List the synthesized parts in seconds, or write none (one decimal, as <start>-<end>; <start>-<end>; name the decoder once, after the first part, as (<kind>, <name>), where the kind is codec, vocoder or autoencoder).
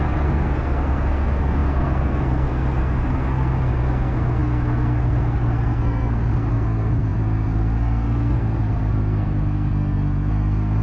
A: 0.0-10.8 (codec, SNAC)